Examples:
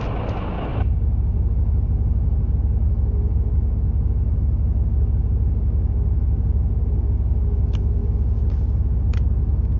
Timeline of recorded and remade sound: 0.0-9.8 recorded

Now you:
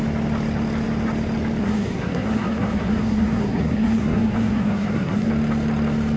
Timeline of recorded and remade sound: 0.0-1.6 recorded; 1.6-5.3 remade; 5.3-6.2 recorded

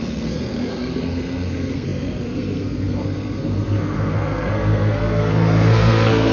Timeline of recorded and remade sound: 0.0-6.3 remade